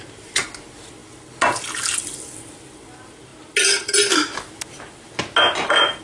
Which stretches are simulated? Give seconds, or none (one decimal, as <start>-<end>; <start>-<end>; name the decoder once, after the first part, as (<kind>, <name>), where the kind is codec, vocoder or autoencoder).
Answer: none